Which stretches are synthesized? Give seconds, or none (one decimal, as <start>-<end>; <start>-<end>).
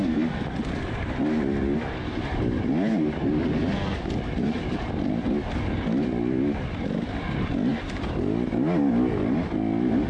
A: none